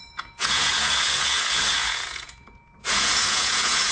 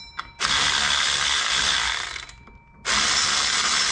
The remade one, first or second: first